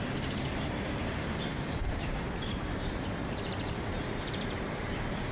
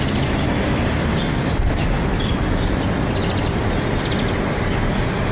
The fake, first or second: first